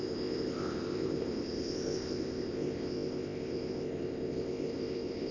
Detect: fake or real fake